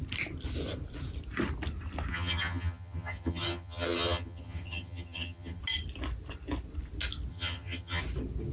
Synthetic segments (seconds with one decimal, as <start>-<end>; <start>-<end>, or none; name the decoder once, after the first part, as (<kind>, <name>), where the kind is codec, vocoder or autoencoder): 2.1-5.6 (vocoder, HiFi-GAN); 7.3-8.0